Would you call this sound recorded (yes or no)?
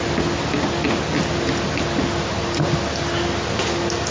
yes